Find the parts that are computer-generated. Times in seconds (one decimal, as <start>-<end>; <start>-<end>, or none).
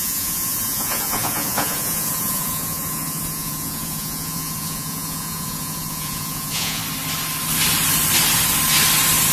0.0-6.8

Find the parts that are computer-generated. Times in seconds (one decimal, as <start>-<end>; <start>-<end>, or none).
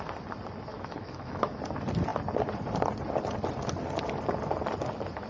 0.7-1.6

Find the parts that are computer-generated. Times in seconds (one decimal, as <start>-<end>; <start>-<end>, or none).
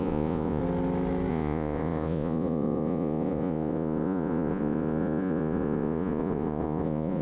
0.0-0.6; 1.3-7.2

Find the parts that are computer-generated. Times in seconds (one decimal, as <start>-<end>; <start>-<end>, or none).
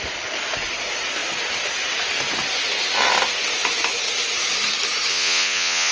5.1-5.9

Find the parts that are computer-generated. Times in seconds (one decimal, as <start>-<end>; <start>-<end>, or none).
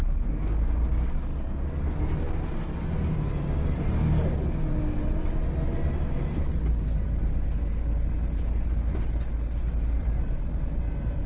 1.3-2.0; 10.0-10.8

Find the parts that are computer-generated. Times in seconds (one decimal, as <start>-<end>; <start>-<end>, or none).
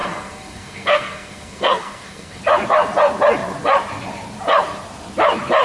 0.0-2.4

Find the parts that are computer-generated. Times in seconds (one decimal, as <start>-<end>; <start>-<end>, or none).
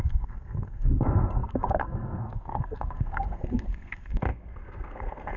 0.0-5.4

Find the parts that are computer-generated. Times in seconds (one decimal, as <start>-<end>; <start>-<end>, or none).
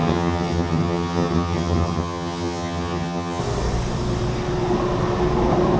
0.0-3.4